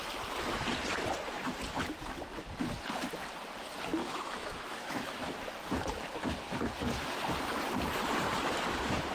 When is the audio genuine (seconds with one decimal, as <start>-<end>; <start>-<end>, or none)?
0.0-4.0; 5.2-9.1